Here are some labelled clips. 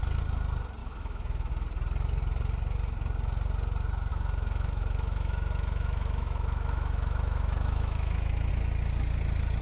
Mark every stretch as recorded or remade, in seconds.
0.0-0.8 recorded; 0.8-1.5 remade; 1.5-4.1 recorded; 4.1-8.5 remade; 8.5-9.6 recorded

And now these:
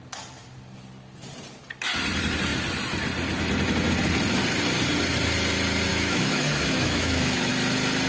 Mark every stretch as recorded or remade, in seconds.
0.0-5.9 recorded; 5.9-7.5 remade; 7.5-8.1 recorded